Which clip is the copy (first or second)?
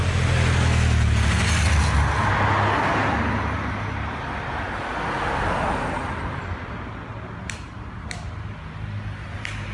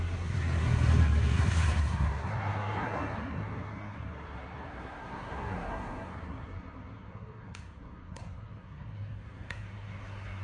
second